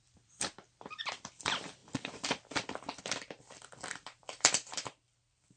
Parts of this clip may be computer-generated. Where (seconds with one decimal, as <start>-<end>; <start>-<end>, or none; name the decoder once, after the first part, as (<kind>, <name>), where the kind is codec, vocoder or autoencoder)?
0.0-5.6 (vocoder, BigVGAN v2)